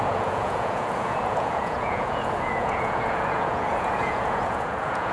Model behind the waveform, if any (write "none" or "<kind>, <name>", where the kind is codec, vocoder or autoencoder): vocoder, Vocos